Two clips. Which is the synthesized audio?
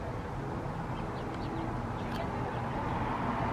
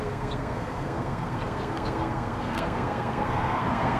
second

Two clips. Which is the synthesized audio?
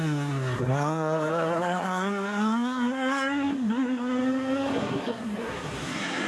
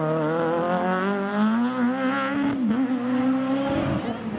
first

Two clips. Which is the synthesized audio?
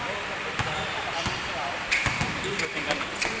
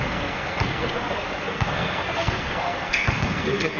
second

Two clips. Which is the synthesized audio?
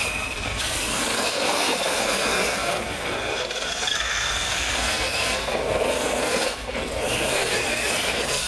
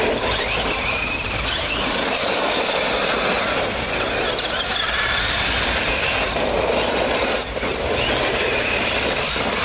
first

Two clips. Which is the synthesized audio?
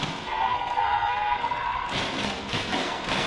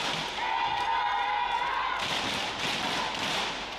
first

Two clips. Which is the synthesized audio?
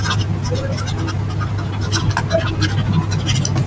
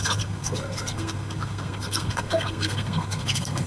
second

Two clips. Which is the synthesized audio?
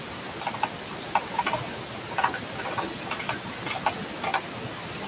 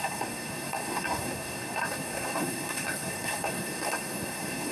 second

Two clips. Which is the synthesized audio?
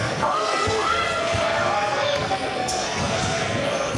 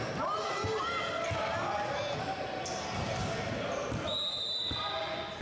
first